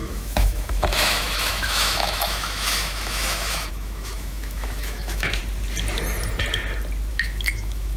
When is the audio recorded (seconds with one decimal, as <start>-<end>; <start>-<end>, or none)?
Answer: 5.4-7.1

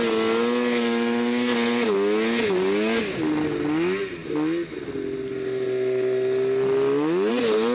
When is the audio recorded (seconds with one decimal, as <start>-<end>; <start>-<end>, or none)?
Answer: 0.0-7.7